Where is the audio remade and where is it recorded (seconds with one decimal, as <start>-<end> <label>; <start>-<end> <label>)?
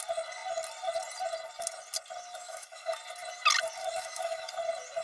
0.0-2.4 recorded; 2.4-3.0 remade; 3.0-3.8 recorded; 3.8-4.5 remade; 4.5-5.0 recorded